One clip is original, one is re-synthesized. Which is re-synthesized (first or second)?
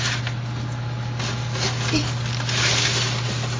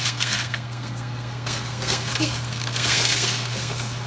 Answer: second